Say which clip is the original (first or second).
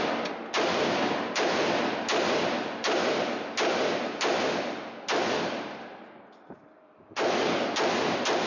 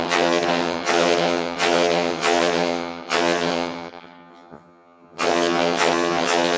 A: first